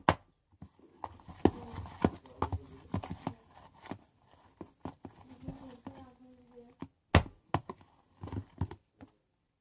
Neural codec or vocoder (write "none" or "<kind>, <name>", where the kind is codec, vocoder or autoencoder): none